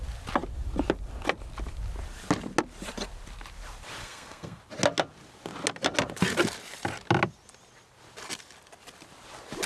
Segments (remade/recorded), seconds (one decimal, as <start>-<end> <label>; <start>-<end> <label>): 0.0-4.0 recorded; 4.0-4.6 remade; 4.6-9.7 recorded